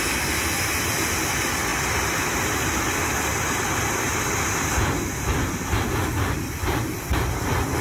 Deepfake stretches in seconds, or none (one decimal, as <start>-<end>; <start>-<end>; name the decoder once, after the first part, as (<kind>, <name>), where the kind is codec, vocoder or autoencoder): none

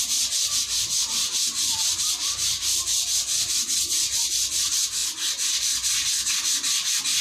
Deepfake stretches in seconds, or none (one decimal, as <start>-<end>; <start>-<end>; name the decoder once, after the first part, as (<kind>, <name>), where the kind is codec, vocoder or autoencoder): 1.2-4.5 (vocoder, BigVGAN v2)

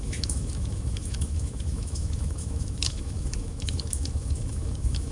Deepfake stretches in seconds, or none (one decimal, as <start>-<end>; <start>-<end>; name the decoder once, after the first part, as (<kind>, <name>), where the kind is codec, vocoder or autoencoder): 0.0-5.1 (autoencoder, DAC-VAE)

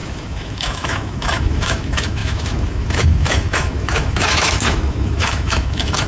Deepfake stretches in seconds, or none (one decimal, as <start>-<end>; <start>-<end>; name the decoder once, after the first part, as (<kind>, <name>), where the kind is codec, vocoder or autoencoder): 0.0-6.1 (autoencoder, DAC-VAE)

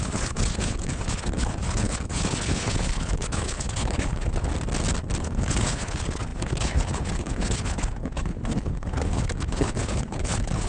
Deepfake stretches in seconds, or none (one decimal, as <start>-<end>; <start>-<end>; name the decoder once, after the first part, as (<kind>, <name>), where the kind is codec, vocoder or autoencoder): 0.0-4.5 (codec, HILCodec); 5.2-10.7

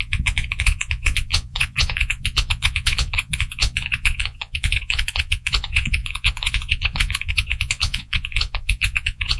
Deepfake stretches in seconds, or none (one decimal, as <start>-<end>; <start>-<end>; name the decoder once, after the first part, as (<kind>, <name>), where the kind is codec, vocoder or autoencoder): 0.0-9.4 (vocoder, Vocos)

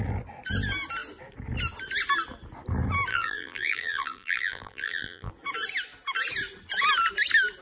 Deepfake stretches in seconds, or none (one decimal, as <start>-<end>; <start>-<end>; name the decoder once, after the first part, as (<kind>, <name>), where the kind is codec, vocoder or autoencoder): 3.1-5.3 (vocoder, BigVGAN v2)

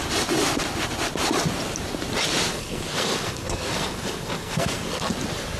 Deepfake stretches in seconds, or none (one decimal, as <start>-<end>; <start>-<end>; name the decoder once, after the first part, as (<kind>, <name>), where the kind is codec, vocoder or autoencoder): 2.5-5.1 (codec, SNAC)